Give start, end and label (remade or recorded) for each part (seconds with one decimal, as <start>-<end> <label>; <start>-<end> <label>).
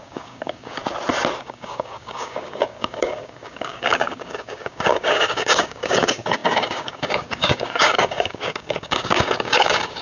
0.0-0.8 remade; 0.8-1.4 recorded; 1.4-10.0 remade